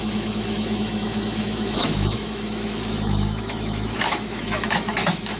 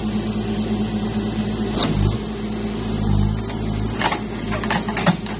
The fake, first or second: first